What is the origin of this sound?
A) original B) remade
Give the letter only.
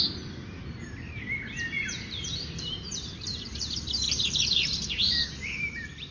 B